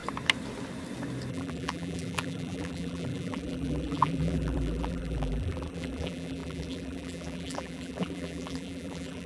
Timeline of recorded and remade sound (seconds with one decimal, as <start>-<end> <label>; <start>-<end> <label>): 0.0-1.3 recorded; 1.3-9.3 remade